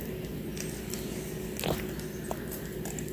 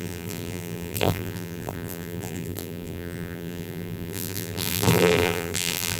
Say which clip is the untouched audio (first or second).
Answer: first